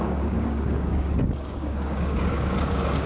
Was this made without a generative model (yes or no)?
no